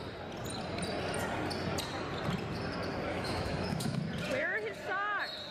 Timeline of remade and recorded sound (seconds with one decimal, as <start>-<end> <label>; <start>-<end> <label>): 0.0-3.1 recorded; 3.1-4.0 remade; 4.0-5.5 recorded